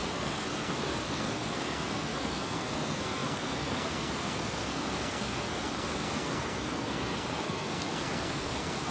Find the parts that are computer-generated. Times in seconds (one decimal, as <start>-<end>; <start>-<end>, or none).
0.0-8.9